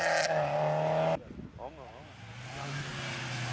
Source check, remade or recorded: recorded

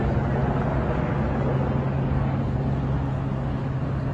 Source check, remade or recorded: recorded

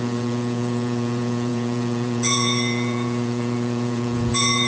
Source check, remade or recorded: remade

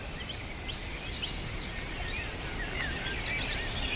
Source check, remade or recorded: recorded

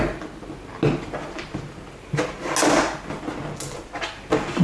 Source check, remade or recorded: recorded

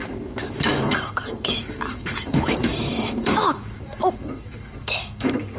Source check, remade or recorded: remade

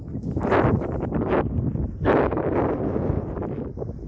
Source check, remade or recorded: recorded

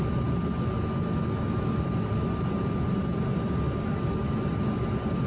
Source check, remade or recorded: recorded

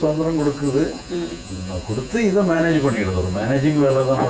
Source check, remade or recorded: remade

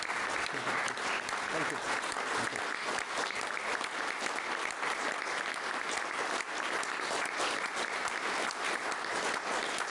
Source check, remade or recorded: recorded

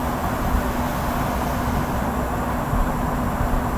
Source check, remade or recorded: recorded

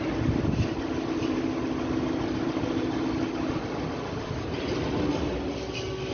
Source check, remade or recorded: recorded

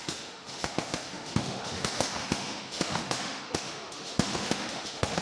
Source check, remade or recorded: remade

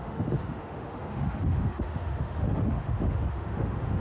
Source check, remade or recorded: remade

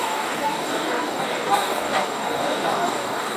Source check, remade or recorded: remade